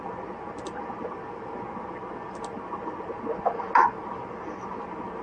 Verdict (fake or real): real